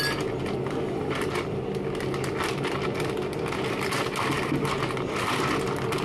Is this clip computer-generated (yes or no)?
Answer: no